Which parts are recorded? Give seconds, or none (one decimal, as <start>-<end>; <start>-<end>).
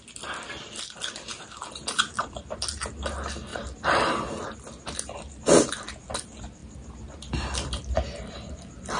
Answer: 0.0-9.0